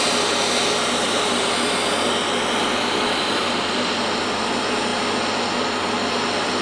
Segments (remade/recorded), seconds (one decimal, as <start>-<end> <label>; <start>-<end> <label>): 0.0-6.6 recorded